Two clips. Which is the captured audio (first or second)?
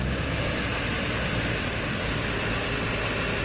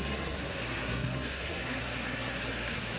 first